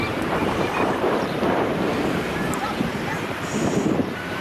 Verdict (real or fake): fake